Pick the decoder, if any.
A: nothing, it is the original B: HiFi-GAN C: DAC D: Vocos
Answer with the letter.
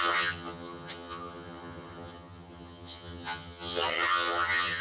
B